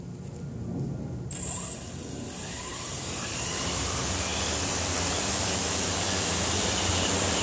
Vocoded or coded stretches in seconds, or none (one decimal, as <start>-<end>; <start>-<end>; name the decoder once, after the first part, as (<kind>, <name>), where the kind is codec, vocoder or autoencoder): none